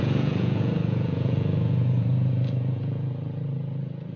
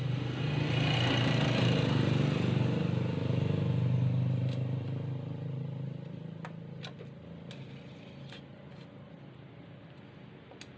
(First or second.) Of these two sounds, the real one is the second